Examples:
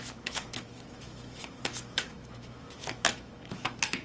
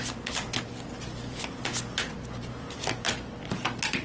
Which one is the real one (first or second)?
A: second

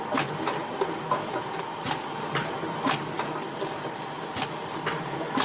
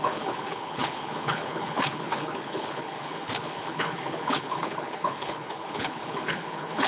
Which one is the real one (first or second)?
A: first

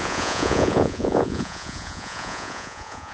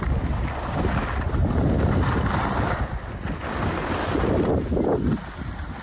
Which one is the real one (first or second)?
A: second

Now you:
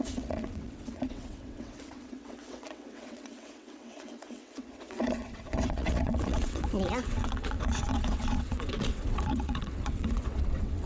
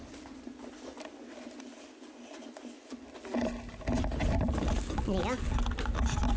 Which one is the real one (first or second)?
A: second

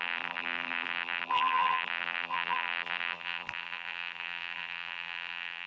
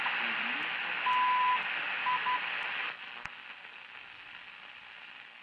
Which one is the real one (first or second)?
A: second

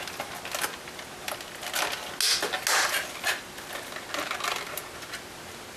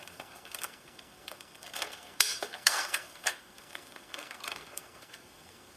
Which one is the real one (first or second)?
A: first